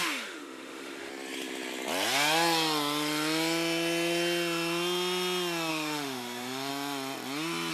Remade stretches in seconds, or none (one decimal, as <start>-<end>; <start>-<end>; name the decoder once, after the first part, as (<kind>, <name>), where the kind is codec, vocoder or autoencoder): 0.0-1.1 (autoencoder, DAC-VAE); 5.7-6.7